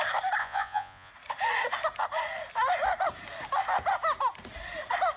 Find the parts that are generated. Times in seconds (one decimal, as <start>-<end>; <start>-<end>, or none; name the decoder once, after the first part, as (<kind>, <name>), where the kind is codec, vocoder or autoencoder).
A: 0.4-1.1 (vocoder, Vocos)